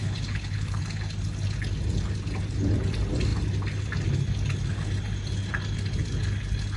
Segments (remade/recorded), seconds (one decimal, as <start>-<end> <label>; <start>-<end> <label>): 0.0-0.8 remade; 0.8-6.8 recorded